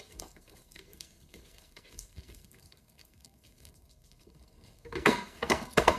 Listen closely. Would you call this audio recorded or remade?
remade